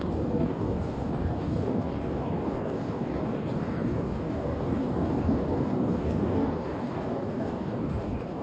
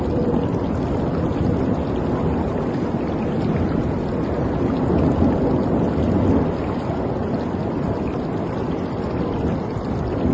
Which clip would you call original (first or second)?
second